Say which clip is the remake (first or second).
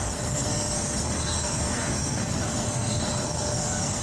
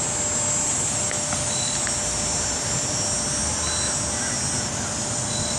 first